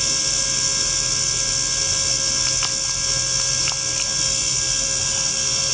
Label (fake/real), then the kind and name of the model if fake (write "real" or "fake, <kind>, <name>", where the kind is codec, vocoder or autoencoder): real